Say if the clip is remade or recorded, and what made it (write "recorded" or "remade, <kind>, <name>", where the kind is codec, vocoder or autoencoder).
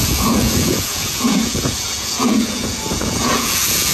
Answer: remade, vocoder, Vocos